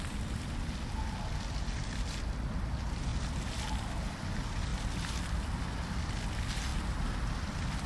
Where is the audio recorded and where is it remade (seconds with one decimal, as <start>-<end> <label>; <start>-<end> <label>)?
0.0-3.1 recorded; 3.1-4.1 remade; 4.1-6.7 recorded; 6.7-7.9 remade